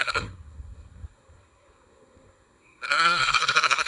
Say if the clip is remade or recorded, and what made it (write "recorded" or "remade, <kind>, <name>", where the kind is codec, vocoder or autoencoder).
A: remade, codec, SNAC